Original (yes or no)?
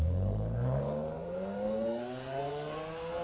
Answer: no